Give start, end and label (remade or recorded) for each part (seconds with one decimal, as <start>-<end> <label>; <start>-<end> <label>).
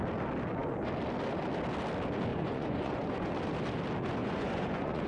0.0-2.3 recorded; 2.3-3.3 remade; 3.3-4.2 recorded; 4.2-5.1 remade